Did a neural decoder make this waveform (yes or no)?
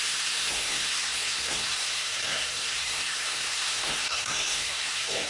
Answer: yes